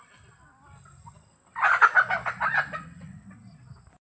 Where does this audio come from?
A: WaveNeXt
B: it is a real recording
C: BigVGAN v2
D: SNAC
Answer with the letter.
B